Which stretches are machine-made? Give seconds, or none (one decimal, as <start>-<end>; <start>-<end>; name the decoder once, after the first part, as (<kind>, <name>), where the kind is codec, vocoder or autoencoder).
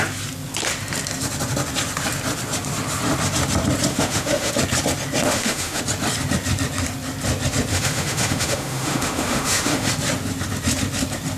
3.9-4.5 (autoencoder, DAC-VAE); 5.2-5.8; 7.7-9.9